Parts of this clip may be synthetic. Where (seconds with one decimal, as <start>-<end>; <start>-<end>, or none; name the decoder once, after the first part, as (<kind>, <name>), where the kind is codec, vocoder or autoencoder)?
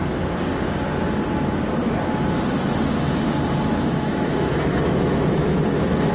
3.7-6.1 (autoencoder, DAC-VAE)